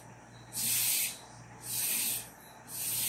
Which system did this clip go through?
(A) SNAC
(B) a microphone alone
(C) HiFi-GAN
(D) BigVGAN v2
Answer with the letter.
B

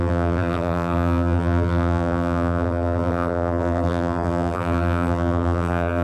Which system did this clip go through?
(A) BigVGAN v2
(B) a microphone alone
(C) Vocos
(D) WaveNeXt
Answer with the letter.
A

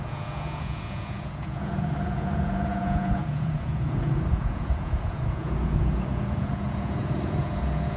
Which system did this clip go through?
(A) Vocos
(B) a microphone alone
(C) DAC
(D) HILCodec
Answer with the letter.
A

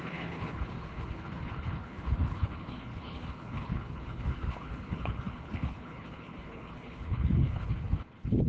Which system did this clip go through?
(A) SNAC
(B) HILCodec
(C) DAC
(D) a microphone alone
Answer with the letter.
B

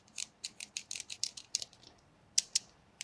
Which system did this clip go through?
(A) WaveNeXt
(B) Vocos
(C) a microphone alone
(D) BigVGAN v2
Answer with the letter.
D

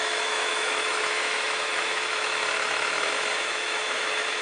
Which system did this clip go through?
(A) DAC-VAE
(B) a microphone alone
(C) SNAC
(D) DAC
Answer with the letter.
A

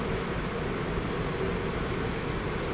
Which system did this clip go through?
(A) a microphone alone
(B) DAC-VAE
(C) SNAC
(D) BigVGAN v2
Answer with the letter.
A